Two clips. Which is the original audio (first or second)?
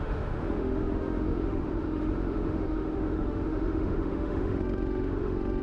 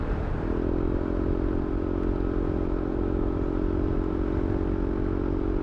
second